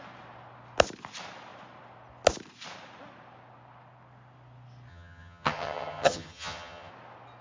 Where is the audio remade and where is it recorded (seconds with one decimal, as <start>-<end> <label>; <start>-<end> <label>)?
0.0-4.9 recorded; 4.9-6.9 remade; 6.9-7.4 recorded